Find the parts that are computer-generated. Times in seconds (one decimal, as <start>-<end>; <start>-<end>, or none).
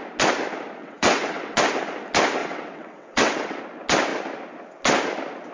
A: 0.8-1.6; 2.4-3.6